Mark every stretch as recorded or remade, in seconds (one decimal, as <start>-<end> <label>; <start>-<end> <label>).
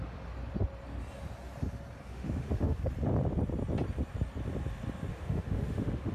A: 0.0-2.1 recorded; 2.1-2.9 remade; 2.9-5.1 recorded; 5.1-6.1 remade